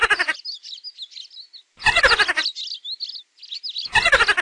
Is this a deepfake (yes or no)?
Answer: no